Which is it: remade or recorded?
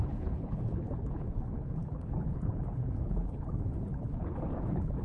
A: remade